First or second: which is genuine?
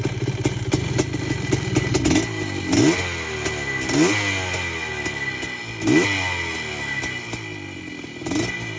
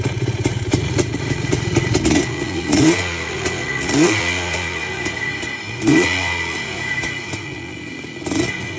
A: first